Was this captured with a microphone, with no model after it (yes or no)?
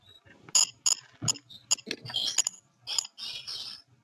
yes